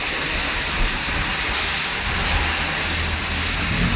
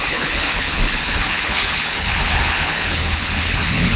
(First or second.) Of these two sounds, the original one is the first